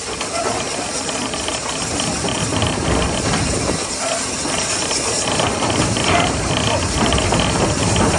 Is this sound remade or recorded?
recorded